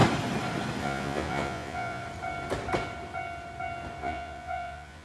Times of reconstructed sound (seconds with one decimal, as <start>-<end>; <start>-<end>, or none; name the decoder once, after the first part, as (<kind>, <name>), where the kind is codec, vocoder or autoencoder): 0.8-2.0 (vocoder, Vocos); 4.0-5.0

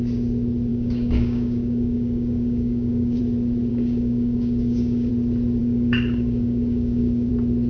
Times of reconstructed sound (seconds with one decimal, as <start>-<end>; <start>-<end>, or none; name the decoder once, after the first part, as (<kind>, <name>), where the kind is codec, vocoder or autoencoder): 0.7-3.2 (codec, DAC); 3.7-5.1; 5.6-7.3

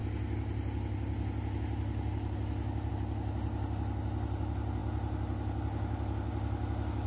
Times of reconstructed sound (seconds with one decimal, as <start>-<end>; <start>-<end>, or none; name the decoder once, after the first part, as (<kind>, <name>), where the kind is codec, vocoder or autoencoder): none

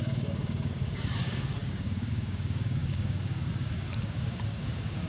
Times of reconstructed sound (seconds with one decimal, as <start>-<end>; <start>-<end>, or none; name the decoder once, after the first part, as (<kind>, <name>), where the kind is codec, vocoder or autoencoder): 0.0-5.1 (codec, DAC)